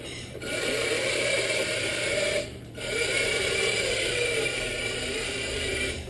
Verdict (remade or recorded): remade